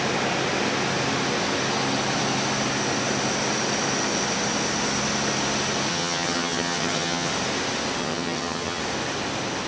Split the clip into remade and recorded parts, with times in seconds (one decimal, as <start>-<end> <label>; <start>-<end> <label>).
0.0-5.9 recorded; 5.9-7.3 remade; 7.3-8.0 recorded; 8.0-8.8 remade; 8.8-9.7 recorded